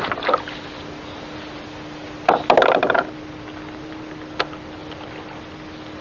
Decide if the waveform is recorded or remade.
recorded